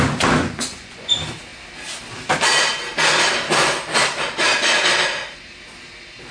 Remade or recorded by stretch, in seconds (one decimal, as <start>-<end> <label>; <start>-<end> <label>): 0.0-0.4 recorded; 0.4-1.1 remade; 1.1-6.3 recorded